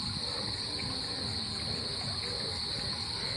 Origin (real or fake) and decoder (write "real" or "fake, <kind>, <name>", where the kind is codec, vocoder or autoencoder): real